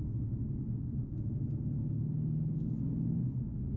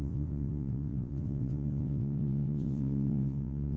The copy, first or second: second